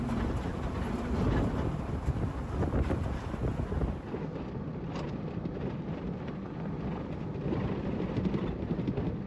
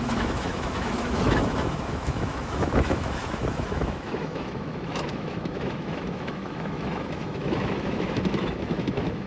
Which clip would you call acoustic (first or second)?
first